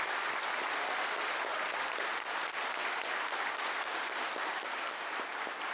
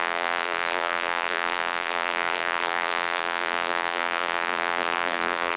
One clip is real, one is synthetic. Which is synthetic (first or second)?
second